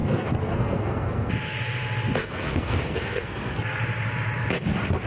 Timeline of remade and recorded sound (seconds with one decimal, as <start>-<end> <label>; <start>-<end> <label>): 0.0-1.3 remade; 1.3-2.2 recorded; 2.2-3.8 remade; 3.8-5.1 recorded